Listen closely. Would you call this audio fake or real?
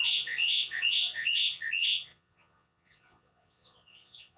fake